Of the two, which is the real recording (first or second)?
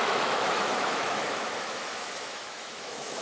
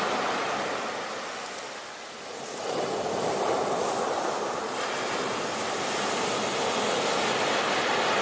second